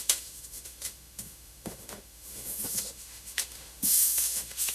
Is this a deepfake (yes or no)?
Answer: yes